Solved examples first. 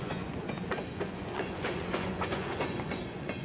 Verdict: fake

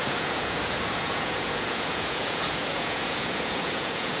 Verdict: fake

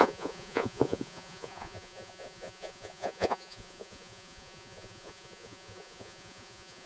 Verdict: fake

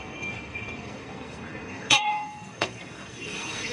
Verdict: fake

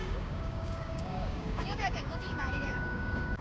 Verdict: fake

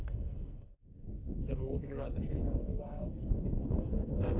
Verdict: fake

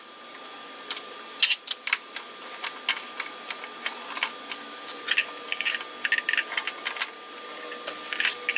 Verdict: real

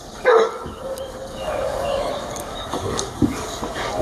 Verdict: fake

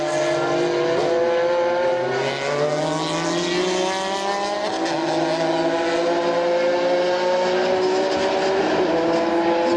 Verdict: real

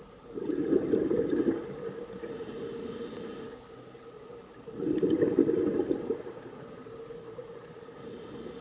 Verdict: real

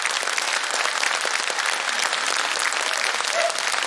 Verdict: real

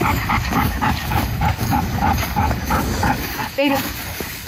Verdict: fake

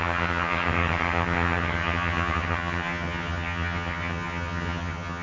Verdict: fake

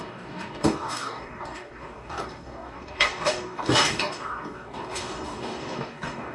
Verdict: fake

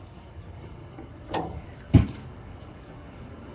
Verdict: fake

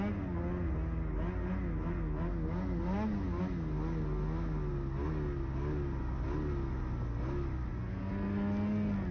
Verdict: real